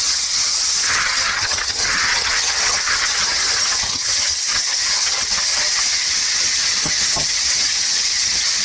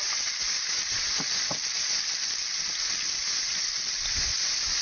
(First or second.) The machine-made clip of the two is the first